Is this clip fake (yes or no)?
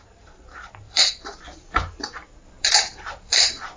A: yes